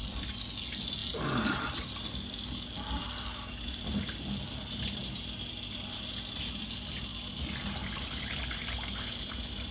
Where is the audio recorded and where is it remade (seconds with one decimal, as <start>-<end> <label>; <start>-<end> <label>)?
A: 0.0-9.7 recorded

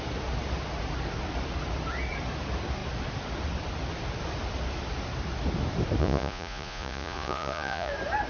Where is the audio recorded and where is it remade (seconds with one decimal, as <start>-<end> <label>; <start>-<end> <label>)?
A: 0.0-6.0 recorded; 6.0-7.9 remade; 7.9-8.3 recorded

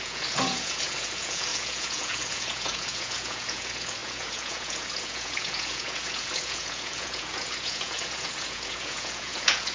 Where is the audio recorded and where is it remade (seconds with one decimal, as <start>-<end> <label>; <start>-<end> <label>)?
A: 0.0-9.7 remade